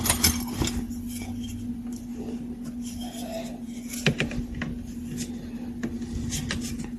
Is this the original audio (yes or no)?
yes